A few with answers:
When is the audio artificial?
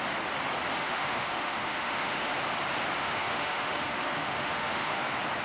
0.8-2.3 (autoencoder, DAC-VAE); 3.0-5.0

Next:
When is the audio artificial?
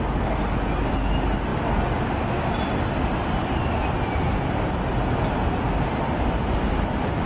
none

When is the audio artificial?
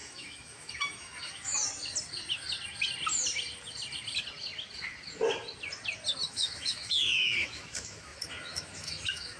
0.0-1.6 (autoencoder, DAC-VAE); 6.3-9.4